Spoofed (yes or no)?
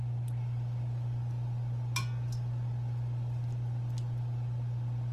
no